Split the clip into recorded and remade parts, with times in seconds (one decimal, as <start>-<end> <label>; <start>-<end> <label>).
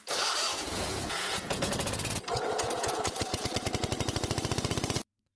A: 0.0-0.5 recorded; 0.5-3.7 remade; 3.7-5.4 recorded